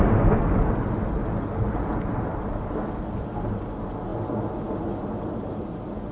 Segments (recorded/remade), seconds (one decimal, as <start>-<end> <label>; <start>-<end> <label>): 0.0-6.1 recorded

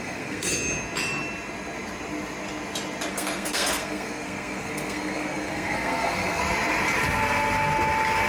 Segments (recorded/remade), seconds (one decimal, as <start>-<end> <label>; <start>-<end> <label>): 0.0-0.5 remade; 0.5-3.1 recorded; 3.1-6.4 remade; 6.4-8.3 recorded

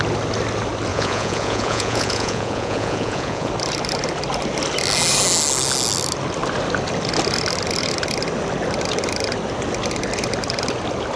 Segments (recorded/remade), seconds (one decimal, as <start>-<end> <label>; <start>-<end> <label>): 0.0-0.9 recorded; 0.9-3.5 remade; 3.5-11.2 recorded